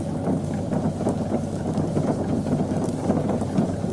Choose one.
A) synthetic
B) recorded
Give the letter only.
B